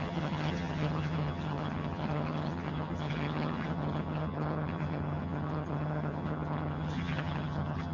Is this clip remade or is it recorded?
remade